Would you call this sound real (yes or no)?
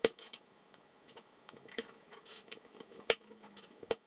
no